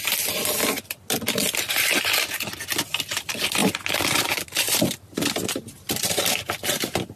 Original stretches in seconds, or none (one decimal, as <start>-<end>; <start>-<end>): 0.0-1.4; 1.9-3.6; 6.3-7.2